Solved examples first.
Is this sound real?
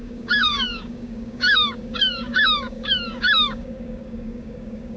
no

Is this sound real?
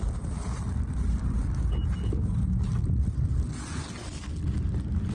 yes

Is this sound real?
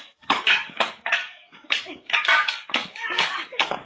no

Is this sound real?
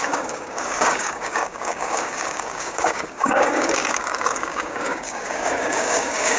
no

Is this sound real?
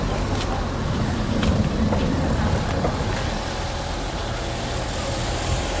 yes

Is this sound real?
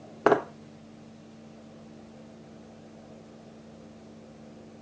yes